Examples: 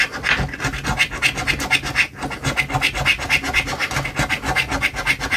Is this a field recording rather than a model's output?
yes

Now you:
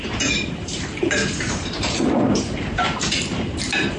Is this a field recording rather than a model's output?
no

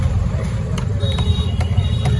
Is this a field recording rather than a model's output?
no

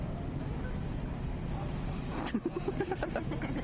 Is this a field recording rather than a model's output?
yes